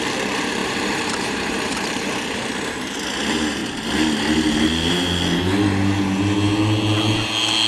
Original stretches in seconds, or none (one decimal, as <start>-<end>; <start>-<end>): 0.0-0.6; 2.5-7.7